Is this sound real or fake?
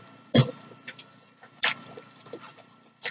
fake